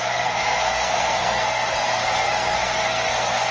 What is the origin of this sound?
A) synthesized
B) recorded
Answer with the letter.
A